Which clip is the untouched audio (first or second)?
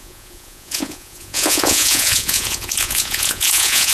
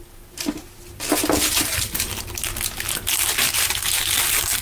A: second